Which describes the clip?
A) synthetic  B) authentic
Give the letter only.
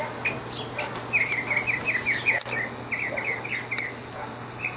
B